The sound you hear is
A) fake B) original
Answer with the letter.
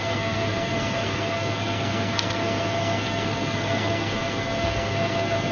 A